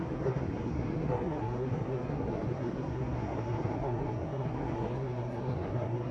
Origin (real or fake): fake